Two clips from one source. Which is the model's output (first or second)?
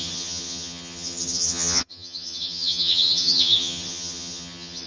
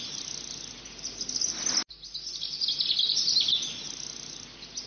first